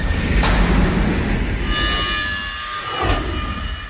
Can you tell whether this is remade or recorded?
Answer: recorded